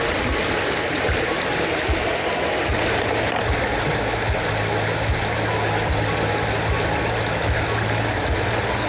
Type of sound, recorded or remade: recorded